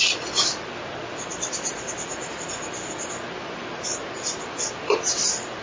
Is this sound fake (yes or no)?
no